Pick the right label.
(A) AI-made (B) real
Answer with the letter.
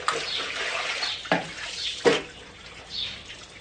B